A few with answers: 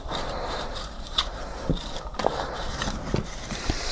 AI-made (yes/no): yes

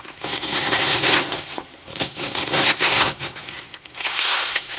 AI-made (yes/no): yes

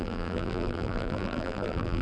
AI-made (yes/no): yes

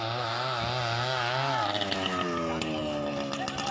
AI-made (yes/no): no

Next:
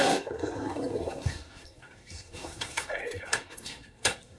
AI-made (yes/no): yes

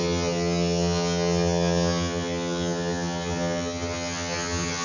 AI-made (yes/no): yes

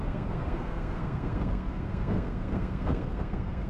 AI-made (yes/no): yes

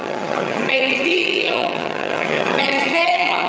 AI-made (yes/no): yes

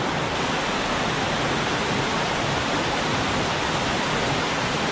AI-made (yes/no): no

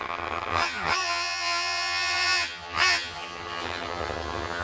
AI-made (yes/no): yes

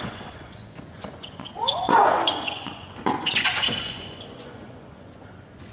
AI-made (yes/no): yes